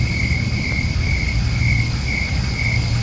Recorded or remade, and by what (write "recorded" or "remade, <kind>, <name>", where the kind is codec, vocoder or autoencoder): recorded